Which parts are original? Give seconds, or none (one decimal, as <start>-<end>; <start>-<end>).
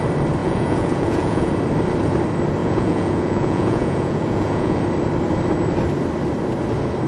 0.0-0.4; 1.5-2.6; 4.8-7.1